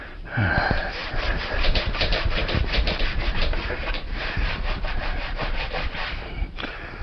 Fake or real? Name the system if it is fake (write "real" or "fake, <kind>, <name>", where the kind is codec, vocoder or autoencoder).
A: fake, vocoder, BigVGAN v2